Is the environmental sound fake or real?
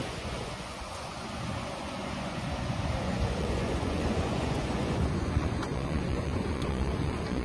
fake